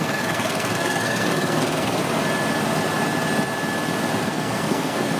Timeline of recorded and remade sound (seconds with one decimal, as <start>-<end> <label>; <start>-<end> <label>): 0.0-2.0 remade; 2.0-4.2 recorded; 4.2-5.2 remade